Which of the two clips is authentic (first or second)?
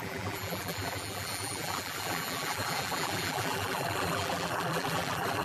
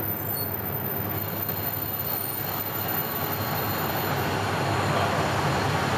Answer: second